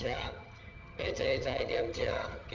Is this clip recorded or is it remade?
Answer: remade